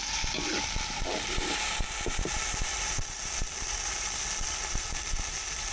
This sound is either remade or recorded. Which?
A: recorded